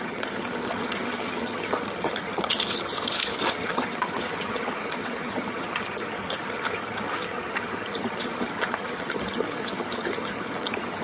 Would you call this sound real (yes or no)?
no